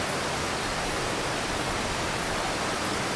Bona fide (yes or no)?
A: yes